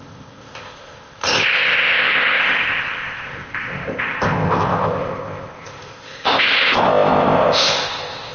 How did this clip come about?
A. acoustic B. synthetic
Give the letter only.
B